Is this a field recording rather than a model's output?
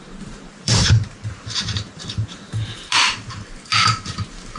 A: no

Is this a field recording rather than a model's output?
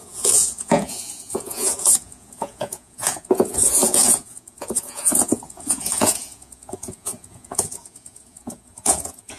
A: no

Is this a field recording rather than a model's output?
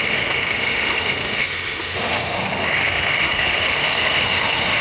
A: no